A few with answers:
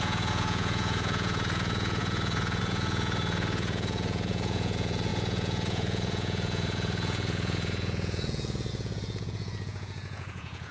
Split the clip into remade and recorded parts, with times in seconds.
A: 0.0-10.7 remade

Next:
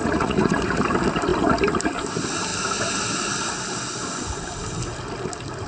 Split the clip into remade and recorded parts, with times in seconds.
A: 0.0-0.6 remade; 0.6-5.7 recorded

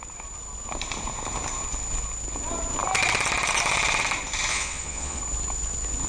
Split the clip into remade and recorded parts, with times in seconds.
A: 0.0-4.5 recorded; 4.5-5.2 remade; 5.2-6.1 recorded

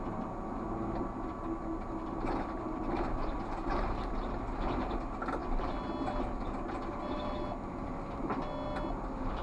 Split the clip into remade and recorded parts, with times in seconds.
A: 0.0-9.4 recorded

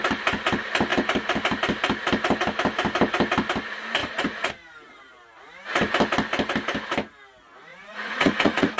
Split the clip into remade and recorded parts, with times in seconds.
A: 0.0-4.0 recorded; 4.0-4.5 remade; 4.5-7.7 recorded; 7.7-8.8 remade

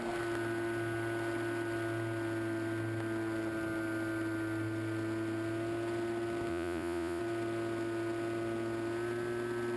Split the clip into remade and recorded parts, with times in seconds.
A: 0.0-6.5 recorded; 6.5-7.2 remade; 7.2-9.8 recorded

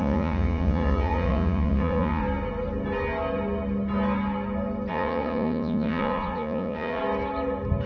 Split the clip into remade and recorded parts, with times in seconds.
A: 0.0-2.2 remade; 2.2-4.9 recorded; 4.9-7.0 remade; 7.0-7.9 recorded

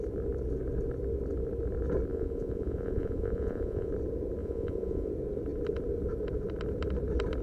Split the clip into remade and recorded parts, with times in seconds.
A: 0.0-2.1 recorded; 2.1-3.9 remade; 3.9-4.4 recorded; 4.4-5.1 remade; 5.1-7.4 recorded